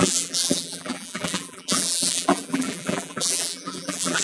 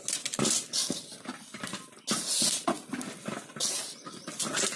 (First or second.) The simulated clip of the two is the first